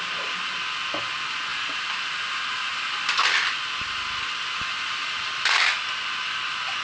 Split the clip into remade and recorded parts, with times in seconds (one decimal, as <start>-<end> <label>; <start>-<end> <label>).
0.0-6.8 recorded